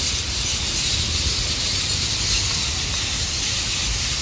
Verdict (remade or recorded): recorded